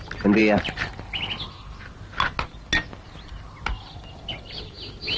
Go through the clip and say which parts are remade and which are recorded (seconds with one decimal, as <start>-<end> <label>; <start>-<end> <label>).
0.0-5.2 recorded